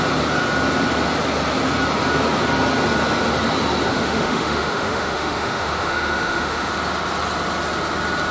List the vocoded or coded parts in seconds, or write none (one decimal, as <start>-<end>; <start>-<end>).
3.9-6.7

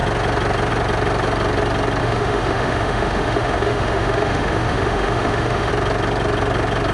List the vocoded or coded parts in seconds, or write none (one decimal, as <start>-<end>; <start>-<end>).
2.0-5.7